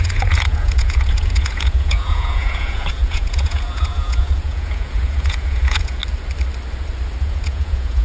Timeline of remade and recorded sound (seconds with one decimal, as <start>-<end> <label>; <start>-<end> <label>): 0.0-6.0 remade; 6.0-7.2 recorded; 7.2-8.0 remade